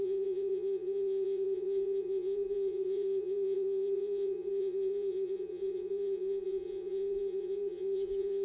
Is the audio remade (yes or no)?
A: yes